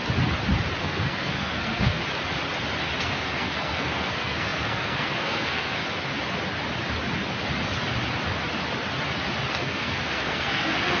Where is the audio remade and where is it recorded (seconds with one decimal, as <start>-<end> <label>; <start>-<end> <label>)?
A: 0.0-0.8 recorded; 0.8-2.0 remade; 2.0-3.0 recorded; 3.0-5.8 remade; 5.8-9.5 recorded; 9.5-11.0 remade